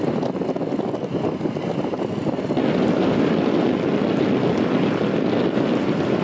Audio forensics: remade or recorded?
recorded